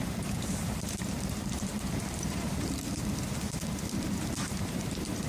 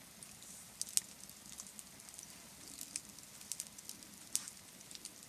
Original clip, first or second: second